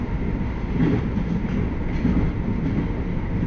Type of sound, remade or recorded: recorded